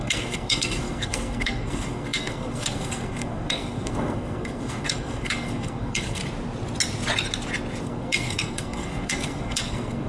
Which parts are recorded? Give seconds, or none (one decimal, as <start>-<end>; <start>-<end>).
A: 6.2-7.8